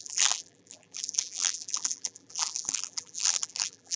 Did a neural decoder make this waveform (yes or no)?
yes